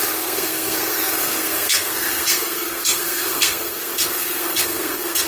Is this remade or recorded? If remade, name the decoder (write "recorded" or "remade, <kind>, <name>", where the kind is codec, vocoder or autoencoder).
remade, codec, SNAC